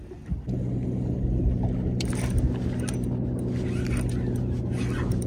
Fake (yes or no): no